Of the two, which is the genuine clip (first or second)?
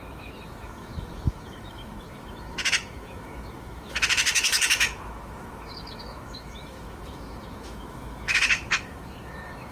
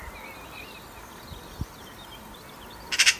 second